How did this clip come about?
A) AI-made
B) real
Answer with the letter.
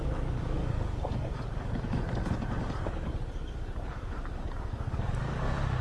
A